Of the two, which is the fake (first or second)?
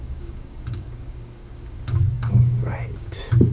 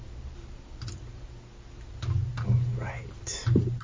first